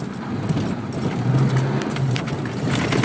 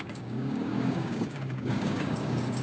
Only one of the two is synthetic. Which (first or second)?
second